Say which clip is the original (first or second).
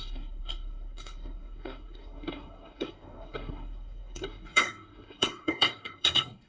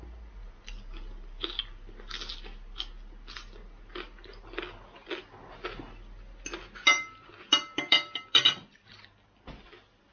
second